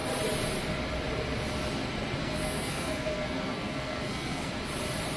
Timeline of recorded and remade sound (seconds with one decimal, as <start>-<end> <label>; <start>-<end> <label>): 0.0-2.2 recorded; 2.2-4.5 remade; 4.5-5.2 recorded

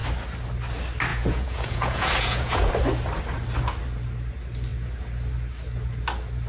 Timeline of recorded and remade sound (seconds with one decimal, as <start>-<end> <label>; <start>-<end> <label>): 0.0-1.1 recorded; 1.1-2.7 remade; 2.7-6.5 recorded

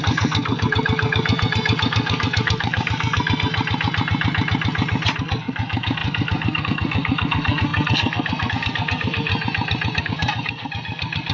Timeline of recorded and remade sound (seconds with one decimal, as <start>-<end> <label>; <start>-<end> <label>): 0.0-3.5 remade; 3.5-5.2 recorded; 5.2-9.3 remade; 9.3-10.0 recorded; 10.0-11.3 remade

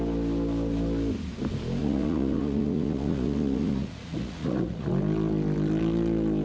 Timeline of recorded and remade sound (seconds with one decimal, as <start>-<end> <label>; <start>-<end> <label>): 0.0-1.8 recorded; 1.8-4.9 remade; 4.9-6.4 recorded

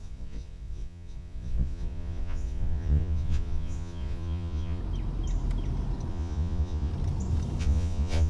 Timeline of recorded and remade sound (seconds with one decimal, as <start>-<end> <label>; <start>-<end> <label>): 0.0-4.8 remade; 4.8-6.1 recorded; 6.1-6.9 remade; 6.9-7.6 recorded; 7.6-8.3 remade

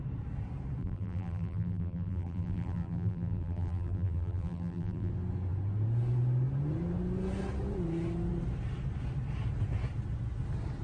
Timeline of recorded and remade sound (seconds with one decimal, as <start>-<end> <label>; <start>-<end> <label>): 0.0-0.8 recorded; 0.8-5.1 remade; 5.1-10.8 recorded